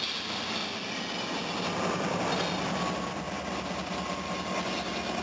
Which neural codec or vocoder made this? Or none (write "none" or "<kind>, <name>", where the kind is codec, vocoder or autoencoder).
none